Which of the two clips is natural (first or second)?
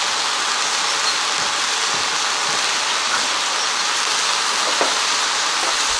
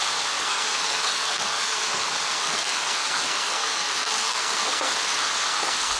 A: first